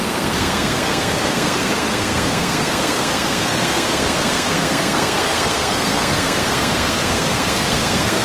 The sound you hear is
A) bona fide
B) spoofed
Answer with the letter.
B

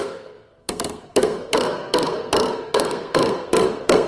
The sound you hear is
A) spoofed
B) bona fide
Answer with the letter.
A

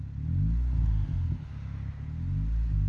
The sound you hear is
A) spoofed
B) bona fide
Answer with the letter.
B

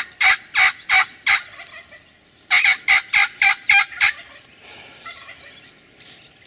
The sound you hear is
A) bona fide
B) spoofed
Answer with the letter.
A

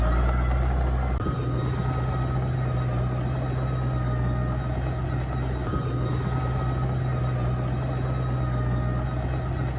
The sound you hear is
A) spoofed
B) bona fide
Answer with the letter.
B